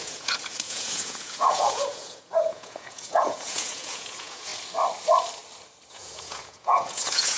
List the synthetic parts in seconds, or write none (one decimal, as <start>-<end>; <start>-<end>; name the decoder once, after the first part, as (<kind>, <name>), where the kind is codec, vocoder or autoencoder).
0.0-4.5 (vocoder, Vocos); 5.9-7.4

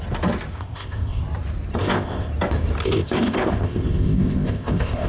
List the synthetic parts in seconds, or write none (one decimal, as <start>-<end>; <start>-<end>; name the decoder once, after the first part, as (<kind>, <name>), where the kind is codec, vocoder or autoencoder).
0.5-1.2 (codec, ZipCodec); 1.8-2.3; 2.8-5.1

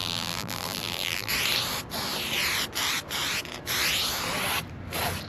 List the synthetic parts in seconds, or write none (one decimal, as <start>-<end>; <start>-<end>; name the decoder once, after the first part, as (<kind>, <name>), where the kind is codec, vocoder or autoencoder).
0.0-1.3 (vocoder, BigVGAN v2)

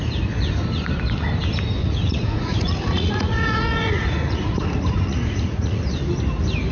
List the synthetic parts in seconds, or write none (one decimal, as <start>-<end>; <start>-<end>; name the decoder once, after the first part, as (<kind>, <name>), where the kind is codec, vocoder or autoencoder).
1.8-5.8 (vocoder, Vocos)